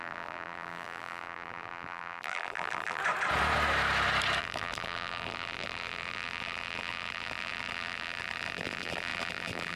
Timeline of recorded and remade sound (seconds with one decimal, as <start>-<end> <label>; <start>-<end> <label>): 0.0-3.0 remade; 3.0-4.4 recorded; 4.4-9.8 remade